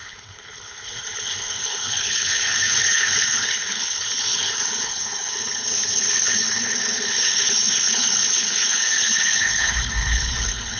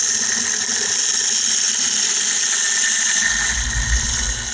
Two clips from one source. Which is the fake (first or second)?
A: first